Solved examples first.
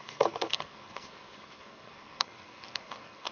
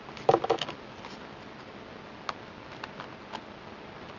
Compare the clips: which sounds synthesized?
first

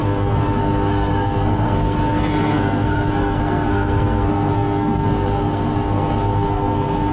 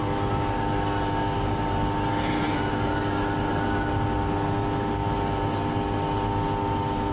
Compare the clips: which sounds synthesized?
first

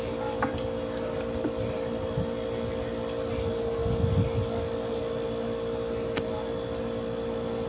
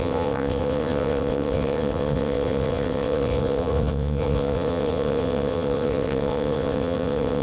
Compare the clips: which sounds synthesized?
second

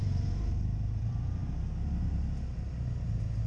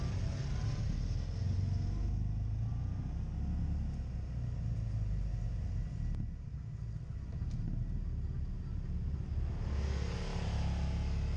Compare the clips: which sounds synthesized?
first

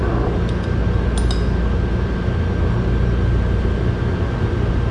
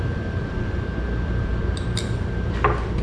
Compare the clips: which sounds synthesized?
second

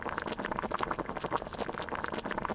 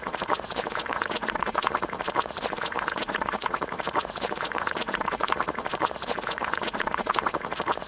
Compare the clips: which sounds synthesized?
second